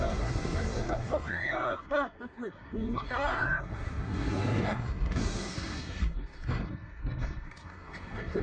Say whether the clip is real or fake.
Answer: fake